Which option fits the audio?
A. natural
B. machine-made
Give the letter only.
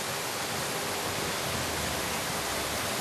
A